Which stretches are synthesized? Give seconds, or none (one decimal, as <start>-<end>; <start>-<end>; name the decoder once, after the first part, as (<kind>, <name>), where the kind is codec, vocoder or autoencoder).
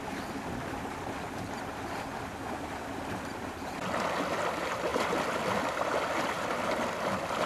none